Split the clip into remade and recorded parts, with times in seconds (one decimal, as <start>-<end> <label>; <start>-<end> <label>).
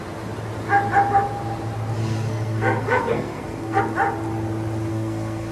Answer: 0.0-2.0 recorded; 2.0-3.8 remade; 3.8-4.9 recorded; 4.9-5.5 remade